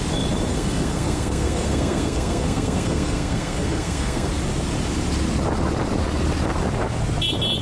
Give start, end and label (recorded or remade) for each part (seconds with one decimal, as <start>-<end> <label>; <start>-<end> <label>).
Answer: 0.0-0.5 recorded; 0.5-4.3 remade; 4.3-7.6 recorded